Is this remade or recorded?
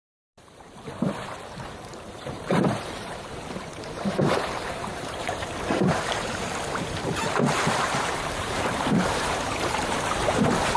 remade